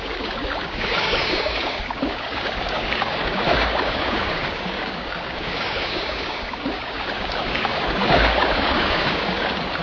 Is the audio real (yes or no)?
no